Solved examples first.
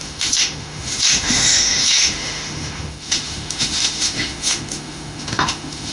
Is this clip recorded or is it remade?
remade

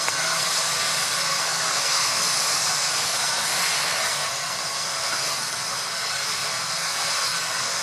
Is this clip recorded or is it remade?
remade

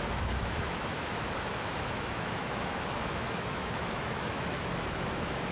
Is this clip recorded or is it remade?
remade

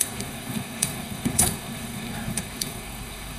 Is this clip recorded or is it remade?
remade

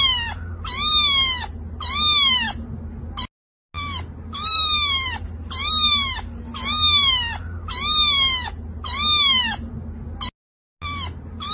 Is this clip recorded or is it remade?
recorded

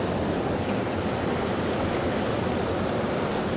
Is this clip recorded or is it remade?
recorded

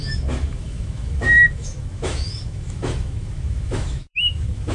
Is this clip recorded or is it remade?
remade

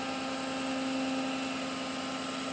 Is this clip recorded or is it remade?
recorded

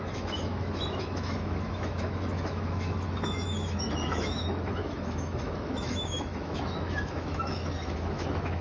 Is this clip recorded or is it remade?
remade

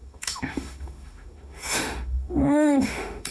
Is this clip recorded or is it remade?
remade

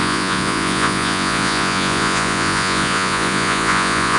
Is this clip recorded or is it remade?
remade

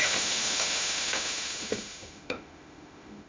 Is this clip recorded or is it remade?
remade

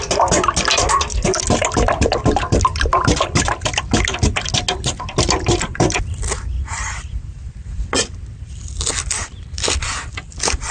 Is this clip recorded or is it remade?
recorded